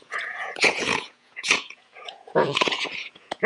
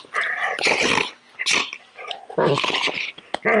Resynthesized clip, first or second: first